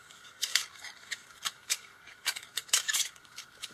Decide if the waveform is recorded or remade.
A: remade